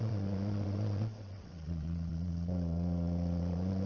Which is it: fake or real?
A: fake